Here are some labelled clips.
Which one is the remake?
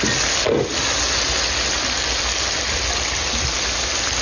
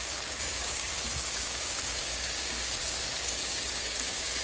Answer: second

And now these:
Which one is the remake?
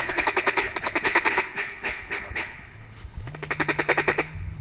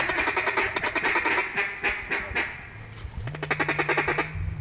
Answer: first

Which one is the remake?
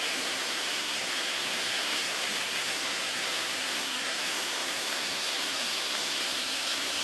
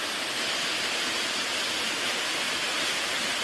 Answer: first